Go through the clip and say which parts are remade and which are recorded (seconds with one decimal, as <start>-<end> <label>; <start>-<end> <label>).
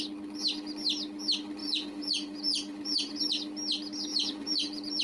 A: 0.0-1.6 recorded; 1.6-3.2 remade; 3.2-4.1 recorded; 4.1-5.0 remade